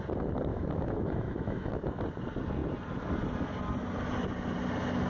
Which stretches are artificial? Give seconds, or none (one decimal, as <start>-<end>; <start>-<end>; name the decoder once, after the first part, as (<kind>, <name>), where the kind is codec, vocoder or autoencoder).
0.5-2.0 (autoencoder, DAC-VAE)